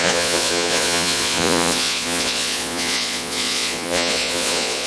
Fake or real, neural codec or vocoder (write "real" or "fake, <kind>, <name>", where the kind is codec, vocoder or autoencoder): fake, vocoder, Vocos